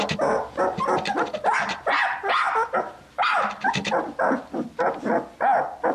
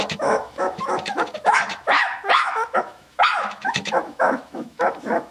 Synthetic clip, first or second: second